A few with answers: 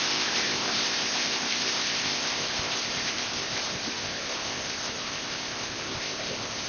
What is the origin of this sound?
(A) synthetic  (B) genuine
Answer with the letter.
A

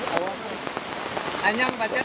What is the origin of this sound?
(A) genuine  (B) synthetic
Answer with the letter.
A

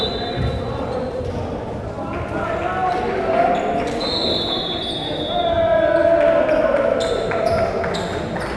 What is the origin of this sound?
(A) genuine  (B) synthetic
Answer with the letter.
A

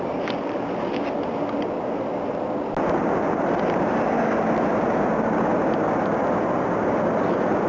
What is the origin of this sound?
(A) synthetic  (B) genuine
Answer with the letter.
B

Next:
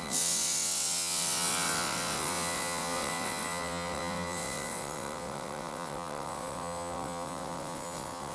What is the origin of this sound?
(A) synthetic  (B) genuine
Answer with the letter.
A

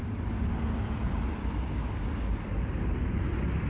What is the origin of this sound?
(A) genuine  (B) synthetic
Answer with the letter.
A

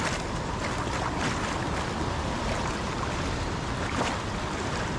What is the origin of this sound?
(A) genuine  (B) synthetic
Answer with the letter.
A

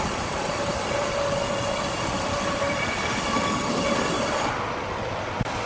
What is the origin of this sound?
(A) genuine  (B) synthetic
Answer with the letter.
A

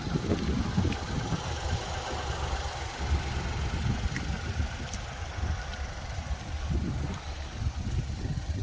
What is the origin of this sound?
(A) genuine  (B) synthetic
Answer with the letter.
A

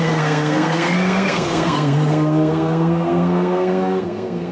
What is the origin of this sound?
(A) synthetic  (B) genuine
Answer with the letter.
A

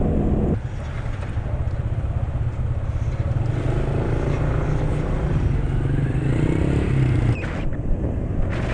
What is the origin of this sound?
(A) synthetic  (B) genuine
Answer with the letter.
B